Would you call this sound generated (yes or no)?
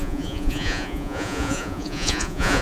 yes